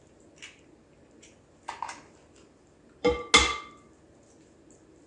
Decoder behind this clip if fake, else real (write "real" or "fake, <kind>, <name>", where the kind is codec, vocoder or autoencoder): real